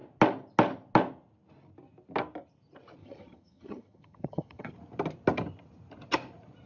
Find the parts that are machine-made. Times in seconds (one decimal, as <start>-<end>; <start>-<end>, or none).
3.0-4.7